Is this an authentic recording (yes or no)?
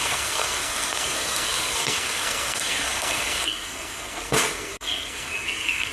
no